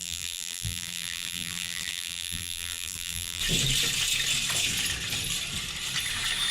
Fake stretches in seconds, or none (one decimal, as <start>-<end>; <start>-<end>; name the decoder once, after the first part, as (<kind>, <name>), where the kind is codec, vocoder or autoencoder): 0.0-3.4 (vocoder, BigVGAN v2)